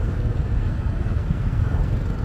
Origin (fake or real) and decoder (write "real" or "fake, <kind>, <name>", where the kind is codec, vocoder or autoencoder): fake, codec, SNAC